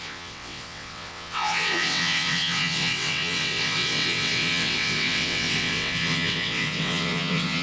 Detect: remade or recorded remade